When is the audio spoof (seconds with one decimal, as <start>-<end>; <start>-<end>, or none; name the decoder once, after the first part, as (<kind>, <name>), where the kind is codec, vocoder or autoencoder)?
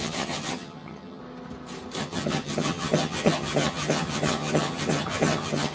0.0-1.2 (vocoder, HiFi-GAN); 2.0-5.7